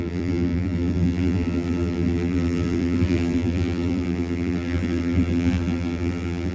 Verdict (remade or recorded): remade